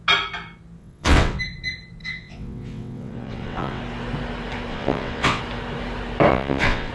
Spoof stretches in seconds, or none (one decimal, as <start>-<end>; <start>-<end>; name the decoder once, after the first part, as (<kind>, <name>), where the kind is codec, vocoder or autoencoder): 0.8-1.4 (vocoder, WaveNeXt); 2.0-3.8; 4.7-5.4; 6.3-6.9